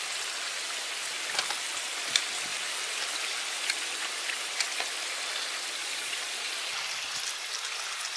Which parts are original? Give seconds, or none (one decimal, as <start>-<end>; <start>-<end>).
0.0-5.8; 6.5-8.2